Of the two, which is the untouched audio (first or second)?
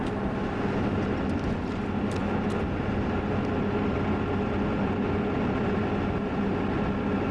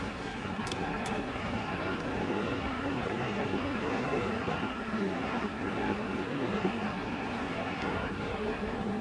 first